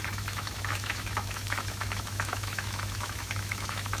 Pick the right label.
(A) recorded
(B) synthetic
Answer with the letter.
B